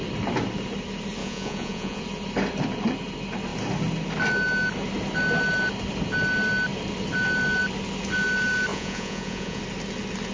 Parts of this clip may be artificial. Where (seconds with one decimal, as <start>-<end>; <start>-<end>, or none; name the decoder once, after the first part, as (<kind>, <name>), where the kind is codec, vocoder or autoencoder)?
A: 1.2-2.0 (vocoder, Vocos); 8.7-9.6